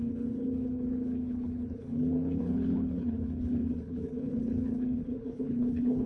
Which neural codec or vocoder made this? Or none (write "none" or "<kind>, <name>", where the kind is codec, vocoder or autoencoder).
codec, HILCodec